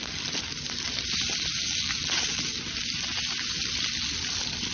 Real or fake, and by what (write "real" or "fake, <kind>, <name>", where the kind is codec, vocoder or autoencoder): real